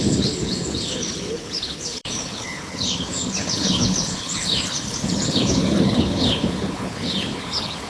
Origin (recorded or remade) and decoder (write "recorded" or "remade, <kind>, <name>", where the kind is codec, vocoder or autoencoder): remade, codec, HILCodec